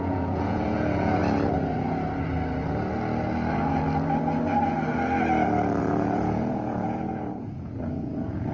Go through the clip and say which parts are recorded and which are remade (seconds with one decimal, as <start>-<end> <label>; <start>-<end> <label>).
0.0-1.2 remade; 1.2-5.8 recorded; 5.8-8.5 remade